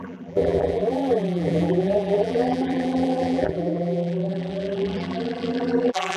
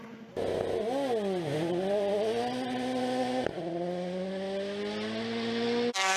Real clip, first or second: second